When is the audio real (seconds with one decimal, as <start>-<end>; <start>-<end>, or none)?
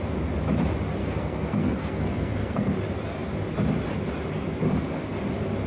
0.0-1.0; 2.7-5.7